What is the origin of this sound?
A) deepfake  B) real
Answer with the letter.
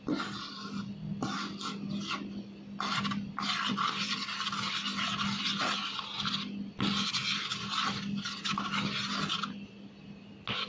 B